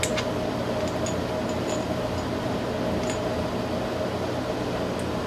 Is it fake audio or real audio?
real